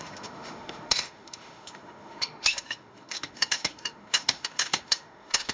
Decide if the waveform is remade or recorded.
remade